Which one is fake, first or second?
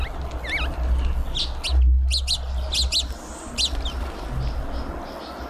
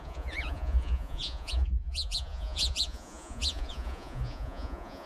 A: second